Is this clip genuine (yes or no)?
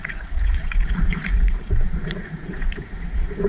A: no